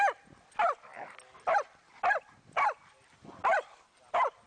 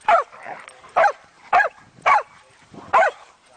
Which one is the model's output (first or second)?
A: second